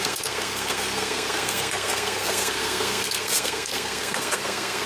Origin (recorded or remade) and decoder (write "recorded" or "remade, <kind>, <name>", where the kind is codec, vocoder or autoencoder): remade, codec, SNAC